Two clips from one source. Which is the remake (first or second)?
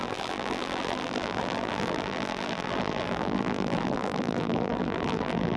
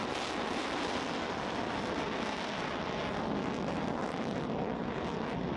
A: first